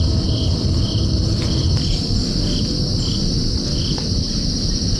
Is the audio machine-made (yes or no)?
no